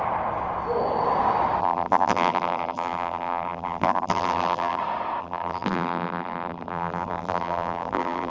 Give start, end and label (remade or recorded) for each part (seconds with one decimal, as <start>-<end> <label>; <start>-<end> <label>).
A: 0.0-1.6 recorded; 1.6-4.8 remade; 4.8-5.2 recorded; 5.2-8.3 remade